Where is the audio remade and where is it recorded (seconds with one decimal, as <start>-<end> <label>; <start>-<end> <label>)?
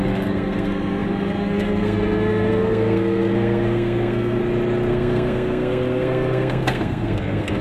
0.0-4.4 remade; 4.4-4.9 recorded; 4.9-7.6 remade